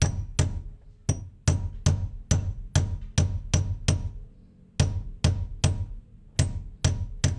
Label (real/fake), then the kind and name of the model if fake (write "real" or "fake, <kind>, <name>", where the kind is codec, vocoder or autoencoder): real